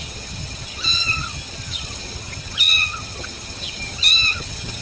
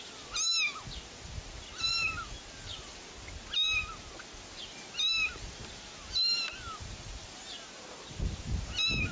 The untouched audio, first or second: second